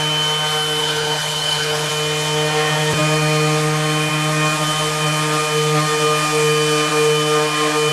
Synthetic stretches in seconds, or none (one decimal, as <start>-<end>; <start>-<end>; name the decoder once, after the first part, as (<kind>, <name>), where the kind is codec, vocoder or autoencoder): 0.8-1.9 (codec, HILCodec)